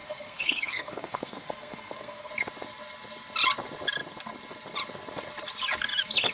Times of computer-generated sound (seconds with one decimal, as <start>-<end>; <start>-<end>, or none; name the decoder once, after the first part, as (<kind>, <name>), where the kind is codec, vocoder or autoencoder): 0.0-2.3 (codec, SNAC)

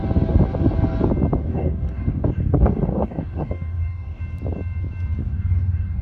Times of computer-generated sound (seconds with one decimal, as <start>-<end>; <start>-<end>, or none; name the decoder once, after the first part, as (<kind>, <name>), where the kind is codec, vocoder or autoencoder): 1.4-4.2 (codec, DAC); 5.2-6.0

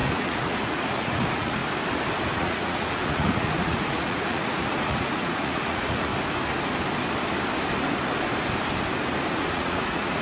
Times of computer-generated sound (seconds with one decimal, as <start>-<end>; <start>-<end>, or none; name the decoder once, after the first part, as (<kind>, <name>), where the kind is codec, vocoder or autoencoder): 0.0-1.6 (vocoder, Vocos); 2.3-6.1; 9.3-10.2